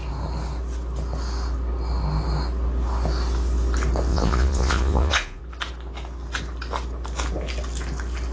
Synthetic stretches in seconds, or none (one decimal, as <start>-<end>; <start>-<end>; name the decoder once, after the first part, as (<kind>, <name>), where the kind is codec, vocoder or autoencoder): 4.1-5.4 (vocoder, Vocos)